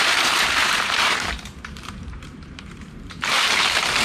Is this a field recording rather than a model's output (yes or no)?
no